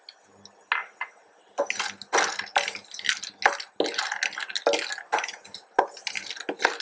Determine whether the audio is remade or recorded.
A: recorded